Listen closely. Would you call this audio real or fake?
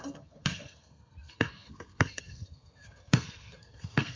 fake